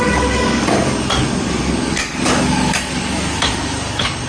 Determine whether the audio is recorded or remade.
remade